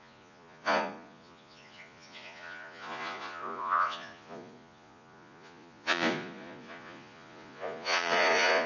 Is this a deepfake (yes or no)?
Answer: yes